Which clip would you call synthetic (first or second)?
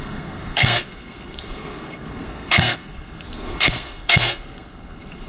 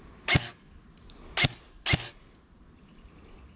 first